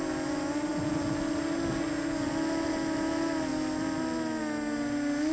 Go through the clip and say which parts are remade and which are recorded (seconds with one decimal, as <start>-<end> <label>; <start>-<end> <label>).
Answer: 0.0-5.3 recorded